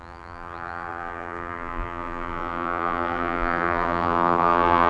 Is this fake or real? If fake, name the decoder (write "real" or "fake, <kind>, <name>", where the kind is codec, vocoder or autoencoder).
fake, vocoder, BigVGAN v2